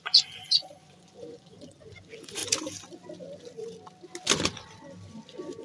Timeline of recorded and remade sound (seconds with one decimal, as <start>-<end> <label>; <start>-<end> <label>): 0.0-2.4 remade; 2.4-5.6 recorded